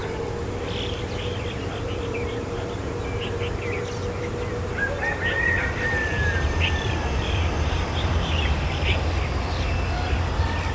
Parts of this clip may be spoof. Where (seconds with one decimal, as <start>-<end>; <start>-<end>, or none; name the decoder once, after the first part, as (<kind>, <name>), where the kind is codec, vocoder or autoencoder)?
0.0-2.9 (vocoder, BigVGAN v2); 5.6-8.1